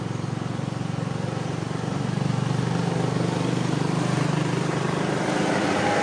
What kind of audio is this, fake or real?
real